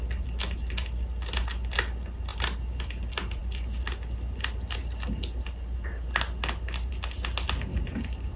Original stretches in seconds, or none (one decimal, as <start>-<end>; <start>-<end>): 0.0-8.4